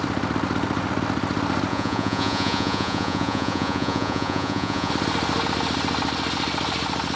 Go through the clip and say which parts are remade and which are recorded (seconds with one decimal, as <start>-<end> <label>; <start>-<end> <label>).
0.0-1.7 recorded; 1.7-4.9 remade; 4.9-7.2 recorded